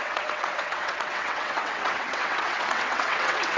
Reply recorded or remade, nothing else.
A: remade